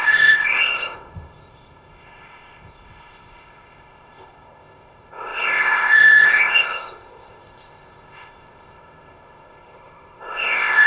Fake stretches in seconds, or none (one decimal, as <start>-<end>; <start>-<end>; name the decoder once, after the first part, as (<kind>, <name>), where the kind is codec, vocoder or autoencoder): 0.0-10.9 (codec, ZipCodec)